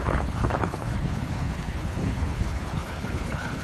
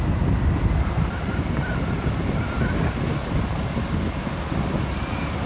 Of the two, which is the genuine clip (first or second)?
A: second